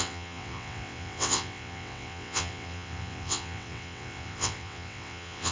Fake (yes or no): yes